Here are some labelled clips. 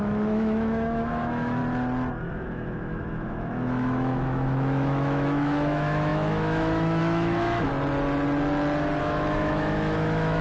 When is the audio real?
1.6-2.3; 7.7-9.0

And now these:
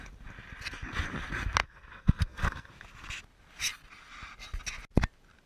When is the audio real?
0.0-1.6; 2.7-5.5

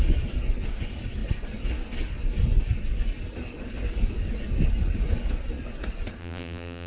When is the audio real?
0.0-6.2

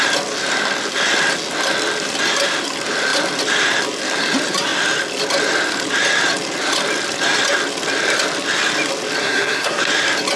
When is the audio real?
0.0-9.2; 9.8-10.4

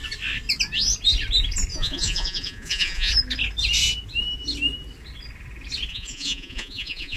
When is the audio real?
0.0-1.7; 3.1-5.9

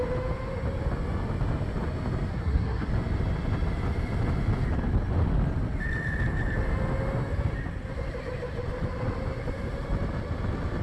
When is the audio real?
0.0-2.3; 2.9-10.8

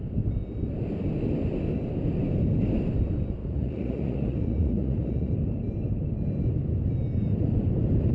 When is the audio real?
0.0-3.4; 5.3-8.1

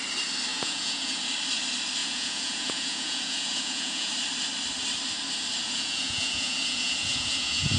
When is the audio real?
0.0-0.5; 1.2-2.0; 4.1-5.6